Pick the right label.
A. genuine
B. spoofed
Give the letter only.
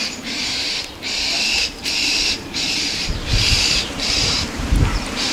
B